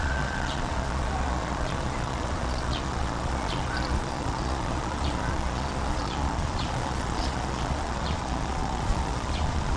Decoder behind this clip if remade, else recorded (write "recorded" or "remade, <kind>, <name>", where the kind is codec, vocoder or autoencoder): remade, vocoder, Vocos